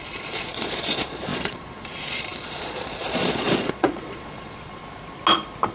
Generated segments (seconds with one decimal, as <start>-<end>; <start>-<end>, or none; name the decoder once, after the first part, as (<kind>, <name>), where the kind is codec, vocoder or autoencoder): 0.0-4.8 (vocoder, Vocos)